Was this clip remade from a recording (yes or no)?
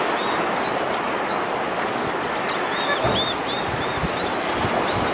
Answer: no